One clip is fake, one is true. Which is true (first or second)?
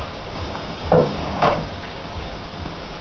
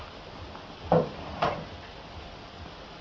second